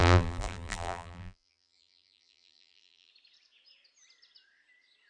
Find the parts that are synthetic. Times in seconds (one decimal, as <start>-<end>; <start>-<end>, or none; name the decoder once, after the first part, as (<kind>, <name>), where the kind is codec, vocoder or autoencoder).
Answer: 0.0-3.1 (vocoder, BigVGAN v2)